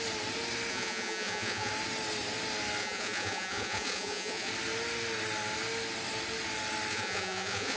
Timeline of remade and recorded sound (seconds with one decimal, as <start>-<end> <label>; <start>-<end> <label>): 0.0-0.7 recorded; 0.7-1.7 remade; 1.7-2.8 recorded; 2.8-4.5 remade; 4.5-6.9 recorded; 6.9-7.8 remade